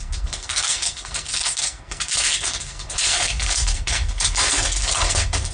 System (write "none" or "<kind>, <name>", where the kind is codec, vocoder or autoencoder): codec, SNAC